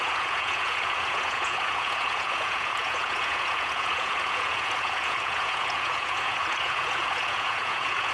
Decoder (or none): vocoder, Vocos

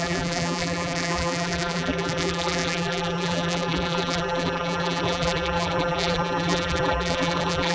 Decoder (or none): vocoder, BigVGAN v2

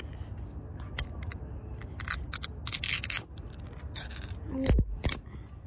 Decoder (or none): none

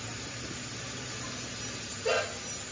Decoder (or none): none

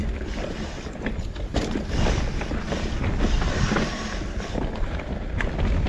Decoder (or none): none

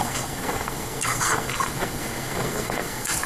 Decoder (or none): codec, SNAC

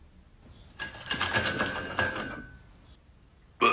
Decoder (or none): none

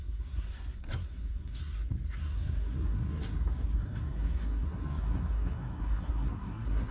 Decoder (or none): codec, SNAC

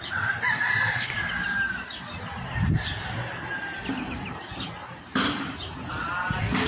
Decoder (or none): vocoder, BigVGAN v2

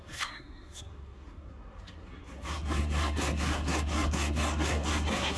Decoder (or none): codec, SNAC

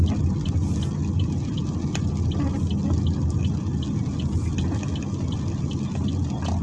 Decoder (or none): none